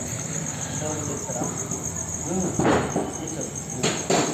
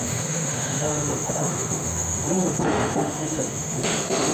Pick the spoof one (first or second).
second